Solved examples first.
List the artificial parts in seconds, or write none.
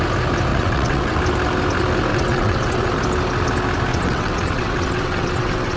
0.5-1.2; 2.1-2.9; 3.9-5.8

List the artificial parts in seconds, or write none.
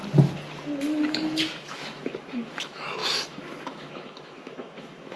0.8-5.2